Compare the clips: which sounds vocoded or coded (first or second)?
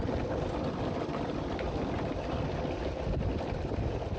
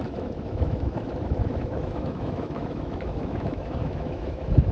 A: second